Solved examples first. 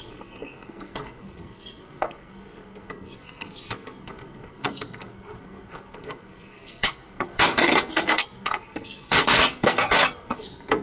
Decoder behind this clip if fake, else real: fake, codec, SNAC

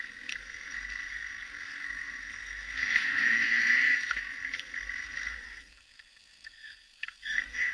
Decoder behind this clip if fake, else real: fake, codec, SNAC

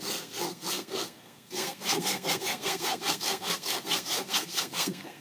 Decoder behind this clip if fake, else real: fake, codec, SNAC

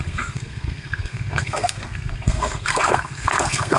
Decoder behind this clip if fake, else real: fake, codec, SNAC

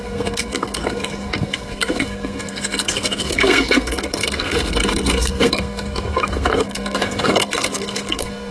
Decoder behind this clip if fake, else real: fake, codec, SNAC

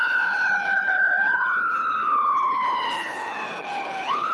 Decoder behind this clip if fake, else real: fake, codec, HILCodec